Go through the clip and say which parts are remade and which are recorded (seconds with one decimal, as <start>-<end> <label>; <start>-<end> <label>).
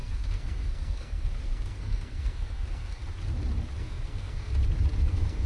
0.0-3.0 remade; 3.0-3.8 recorded; 3.8-4.5 remade; 4.5-5.0 recorded; 5.0-5.5 remade